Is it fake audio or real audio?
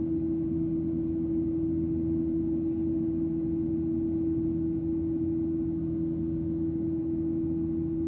real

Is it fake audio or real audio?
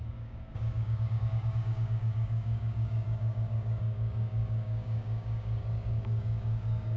fake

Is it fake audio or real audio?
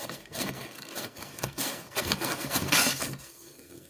fake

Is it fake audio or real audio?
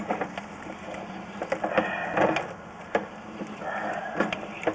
real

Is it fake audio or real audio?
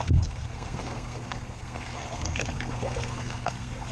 fake